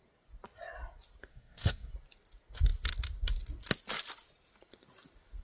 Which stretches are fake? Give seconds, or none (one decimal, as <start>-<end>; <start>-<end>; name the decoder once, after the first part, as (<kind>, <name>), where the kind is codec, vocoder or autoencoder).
1.3-1.9 (codec, SNAC)